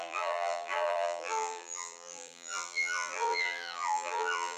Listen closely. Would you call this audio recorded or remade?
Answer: remade